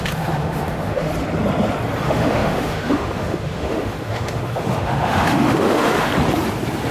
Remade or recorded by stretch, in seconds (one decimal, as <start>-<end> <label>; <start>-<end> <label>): 0.0-1.1 remade; 1.1-2.0 recorded; 2.0-6.1 remade; 6.1-6.9 recorded